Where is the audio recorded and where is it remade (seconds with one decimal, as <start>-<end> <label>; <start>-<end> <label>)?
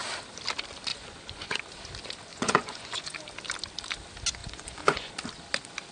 0.0-0.9 recorded; 0.9-1.6 remade; 1.6-2.3 recorded; 2.3-3.2 remade; 3.2-4.4 recorded; 4.4-5.1 remade; 5.1-5.9 recorded